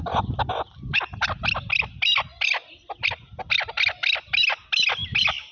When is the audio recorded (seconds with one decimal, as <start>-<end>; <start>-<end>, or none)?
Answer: 0.0-5.5